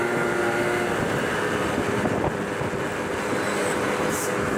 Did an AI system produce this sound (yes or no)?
no